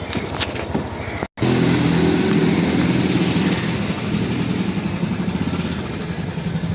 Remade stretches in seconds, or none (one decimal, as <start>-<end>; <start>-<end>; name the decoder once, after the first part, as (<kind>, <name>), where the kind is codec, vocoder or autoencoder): none